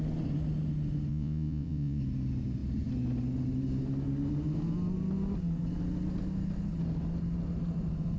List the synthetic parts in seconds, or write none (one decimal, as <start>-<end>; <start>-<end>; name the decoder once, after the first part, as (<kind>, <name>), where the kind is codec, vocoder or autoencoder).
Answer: 1.1-2.0 (vocoder, Vocos)